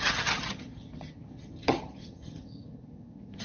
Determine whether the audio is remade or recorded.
remade